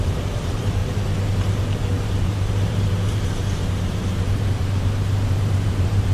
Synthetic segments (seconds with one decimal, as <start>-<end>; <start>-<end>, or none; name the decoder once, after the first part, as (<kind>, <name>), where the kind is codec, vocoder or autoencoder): 0.0-6.1 (vocoder, BigVGAN v2)